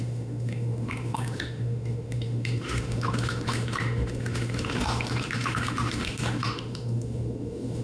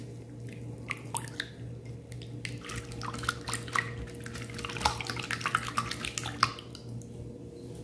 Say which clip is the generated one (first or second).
first